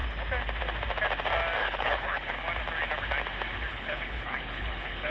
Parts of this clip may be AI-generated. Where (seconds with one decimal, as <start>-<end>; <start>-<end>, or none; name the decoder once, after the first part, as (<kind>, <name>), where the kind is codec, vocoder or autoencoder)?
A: 1.6-2.3 (codec, HILCodec); 3.7-5.1